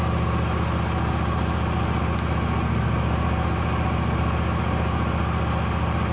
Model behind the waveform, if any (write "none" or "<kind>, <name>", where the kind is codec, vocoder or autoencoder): none